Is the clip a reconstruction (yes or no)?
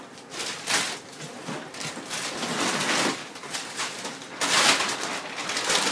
no